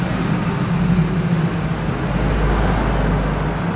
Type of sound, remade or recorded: recorded